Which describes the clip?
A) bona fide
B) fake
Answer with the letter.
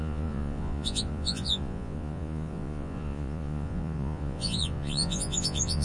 B